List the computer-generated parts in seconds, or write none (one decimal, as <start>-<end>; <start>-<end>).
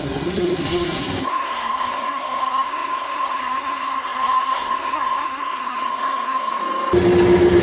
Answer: 0.0-6.6